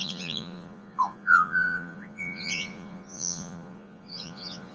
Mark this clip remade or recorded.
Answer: remade